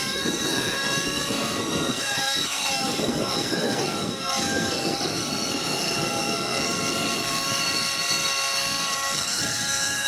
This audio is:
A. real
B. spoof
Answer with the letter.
B